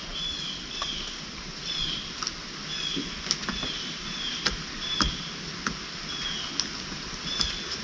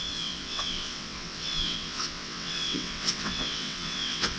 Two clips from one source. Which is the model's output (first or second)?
second